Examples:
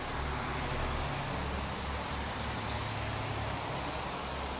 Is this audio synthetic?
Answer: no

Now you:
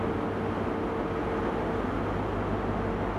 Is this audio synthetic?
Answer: no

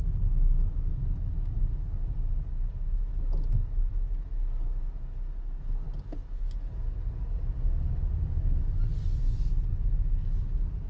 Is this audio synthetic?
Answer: no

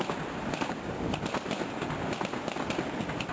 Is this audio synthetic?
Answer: no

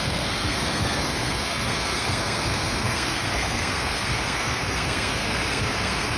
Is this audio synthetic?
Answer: yes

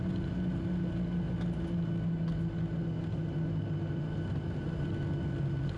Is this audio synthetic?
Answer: no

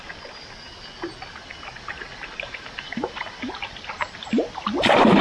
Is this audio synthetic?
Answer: no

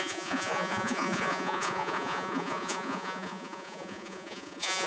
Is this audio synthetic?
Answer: yes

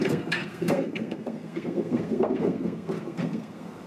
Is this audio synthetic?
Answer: yes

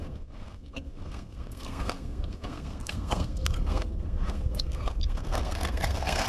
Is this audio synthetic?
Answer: yes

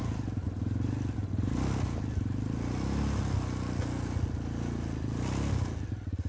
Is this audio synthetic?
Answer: no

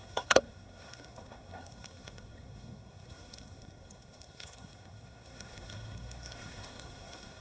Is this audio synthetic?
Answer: yes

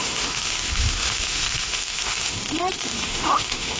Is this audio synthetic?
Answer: yes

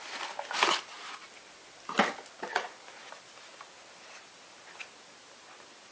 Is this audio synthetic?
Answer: no